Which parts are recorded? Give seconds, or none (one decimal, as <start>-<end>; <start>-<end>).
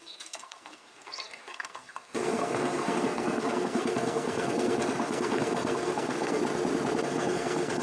6.4-7.0